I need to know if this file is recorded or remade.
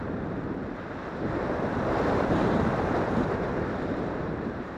remade